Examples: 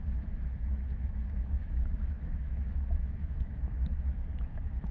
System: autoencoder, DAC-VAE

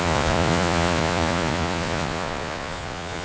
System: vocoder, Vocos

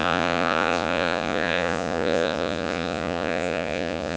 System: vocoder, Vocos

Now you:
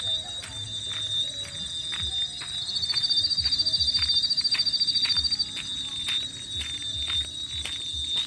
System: none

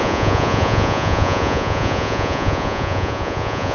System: vocoder, Vocos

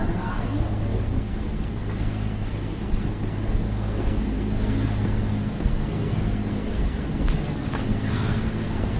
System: codec, SNAC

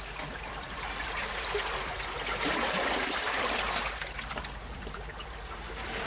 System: vocoder, BigVGAN v2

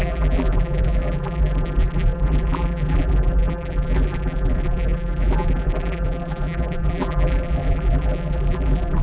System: vocoder, BigVGAN v2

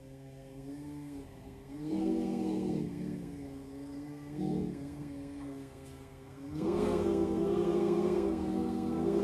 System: codec, SNAC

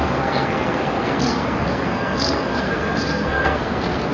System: codec, SNAC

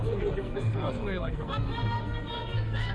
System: codec, SNAC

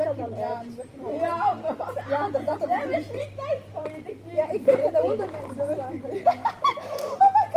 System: vocoder, BigVGAN v2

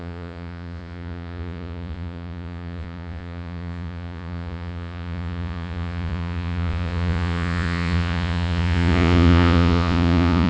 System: vocoder, Vocos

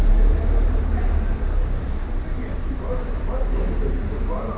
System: none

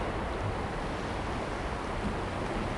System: none